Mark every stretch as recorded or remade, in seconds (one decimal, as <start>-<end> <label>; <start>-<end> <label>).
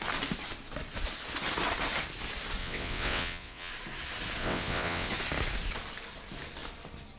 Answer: 0.0-2.6 recorded; 2.6-3.7 remade; 3.7-4.4 recorded; 4.4-5.1 remade; 5.1-7.2 recorded